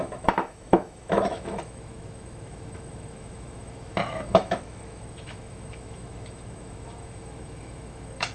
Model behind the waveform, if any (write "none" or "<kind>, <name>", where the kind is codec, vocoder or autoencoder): autoencoder, DAC-VAE